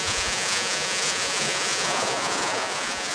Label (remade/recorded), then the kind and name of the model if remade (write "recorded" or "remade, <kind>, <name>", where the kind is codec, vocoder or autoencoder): remade, vocoder, Vocos